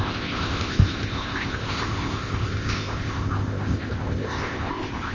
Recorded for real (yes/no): no